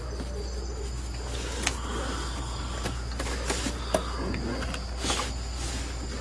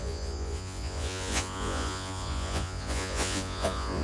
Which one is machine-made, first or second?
second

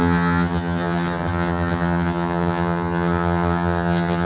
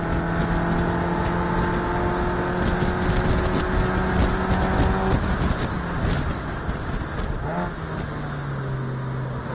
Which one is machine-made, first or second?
first